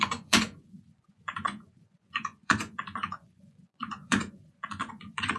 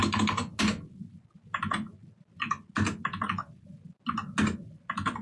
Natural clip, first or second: second